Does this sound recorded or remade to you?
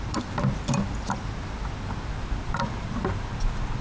recorded